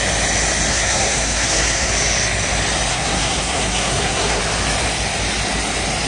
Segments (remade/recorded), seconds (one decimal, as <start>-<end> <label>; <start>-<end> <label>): 0.0-0.7 recorded; 0.7-1.9 remade; 1.9-2.9 recorded; 2.9-4.4 remade; 4.4-6.1 recorded